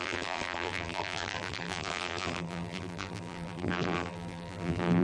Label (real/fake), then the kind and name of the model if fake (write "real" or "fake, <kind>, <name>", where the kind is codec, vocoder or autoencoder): fake, vocoder, BigVGAN v2